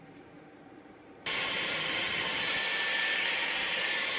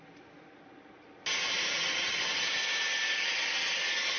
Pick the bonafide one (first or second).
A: second